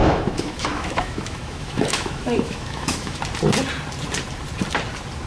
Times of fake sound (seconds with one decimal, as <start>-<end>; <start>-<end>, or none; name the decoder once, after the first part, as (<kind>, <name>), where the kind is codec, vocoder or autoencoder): 0.0-3.2 (autoencoder, DAC-VAE)